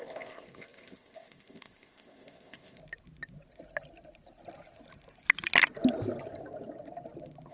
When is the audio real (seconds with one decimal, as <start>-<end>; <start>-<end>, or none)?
2.8-7.5